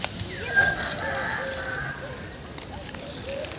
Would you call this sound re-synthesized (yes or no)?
no